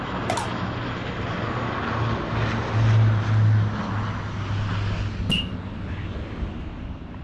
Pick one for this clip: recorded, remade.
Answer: recorded